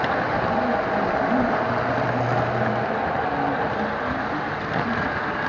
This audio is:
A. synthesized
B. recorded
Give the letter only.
B